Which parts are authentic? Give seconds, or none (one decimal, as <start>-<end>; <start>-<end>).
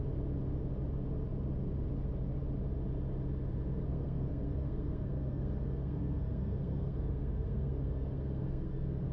0.0-3.9